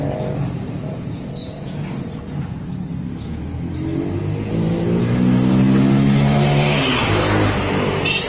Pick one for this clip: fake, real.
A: real